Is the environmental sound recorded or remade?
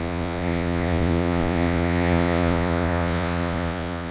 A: remade